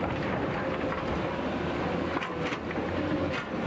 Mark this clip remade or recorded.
recorded